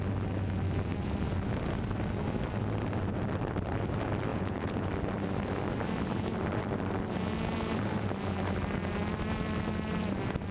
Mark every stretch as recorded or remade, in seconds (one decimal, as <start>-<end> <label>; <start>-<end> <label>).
0.0-4.3 recorded; 4.3-4.9 remade; 4.9-10.5 recorded